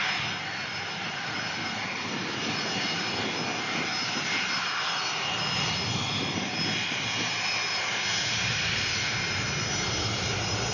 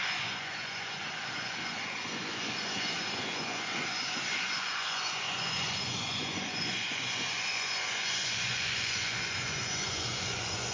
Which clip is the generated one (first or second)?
second